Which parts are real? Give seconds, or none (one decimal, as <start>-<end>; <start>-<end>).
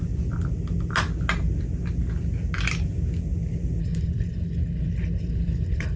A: 0.0-3.8